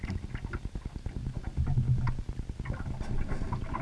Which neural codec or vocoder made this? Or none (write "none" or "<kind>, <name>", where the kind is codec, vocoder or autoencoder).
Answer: none